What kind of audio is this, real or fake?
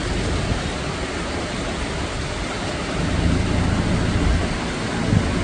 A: real